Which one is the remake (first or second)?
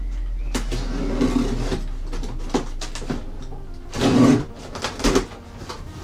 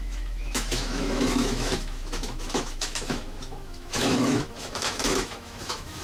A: second